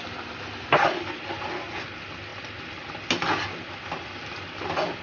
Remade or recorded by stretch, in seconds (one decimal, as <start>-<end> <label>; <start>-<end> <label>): 0.0-5.0 recorded